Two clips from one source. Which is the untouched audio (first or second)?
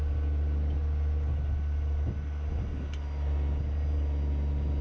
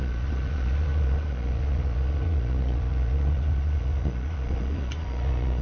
first